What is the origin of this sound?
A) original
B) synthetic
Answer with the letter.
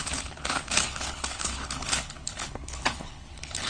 B